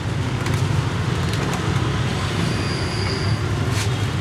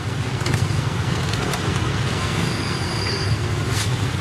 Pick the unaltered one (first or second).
first